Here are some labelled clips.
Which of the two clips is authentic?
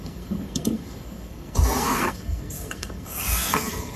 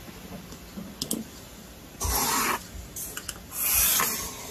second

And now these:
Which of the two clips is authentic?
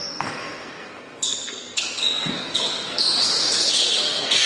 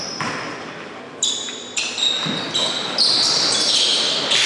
second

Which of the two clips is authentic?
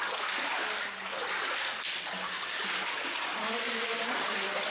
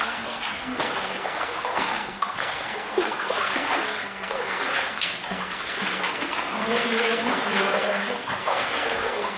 first